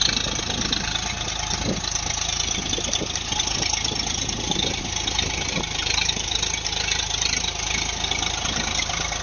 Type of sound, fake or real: real